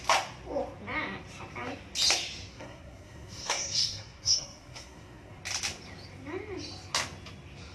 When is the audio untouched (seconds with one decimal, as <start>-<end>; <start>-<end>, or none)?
0.0-2.5; 5.4-7.7